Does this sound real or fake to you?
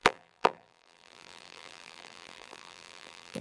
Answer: fake